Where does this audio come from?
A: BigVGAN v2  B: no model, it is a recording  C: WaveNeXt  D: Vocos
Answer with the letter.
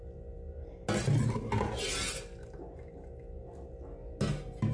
B